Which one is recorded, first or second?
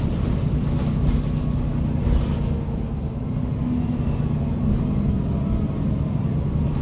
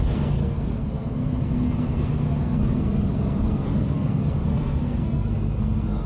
first